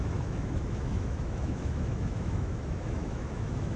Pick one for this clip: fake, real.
fake